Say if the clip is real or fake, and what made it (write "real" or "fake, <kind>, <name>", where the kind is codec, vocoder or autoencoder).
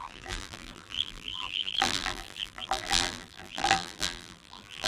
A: fake, vocoder, BigVGAN v2